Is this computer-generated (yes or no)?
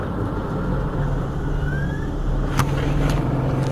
no